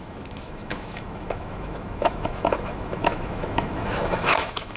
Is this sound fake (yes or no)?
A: yes